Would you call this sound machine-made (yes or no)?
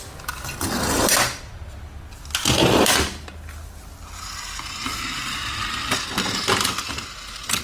no